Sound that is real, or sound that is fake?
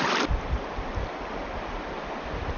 real